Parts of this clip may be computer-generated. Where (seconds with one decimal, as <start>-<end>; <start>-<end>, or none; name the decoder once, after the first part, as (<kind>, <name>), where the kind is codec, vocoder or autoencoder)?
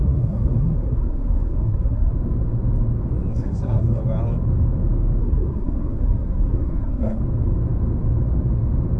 0.0-2.1 (codec, SNAC); 3.3-4.0; 5.2-7.2